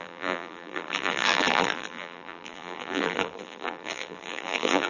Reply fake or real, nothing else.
fake